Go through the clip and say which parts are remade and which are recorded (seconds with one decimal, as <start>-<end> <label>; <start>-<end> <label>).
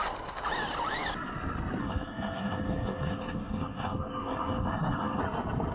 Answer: 0.0-1.8 recorded; 1.8-5.2 remade; 5.2-5.7 recorded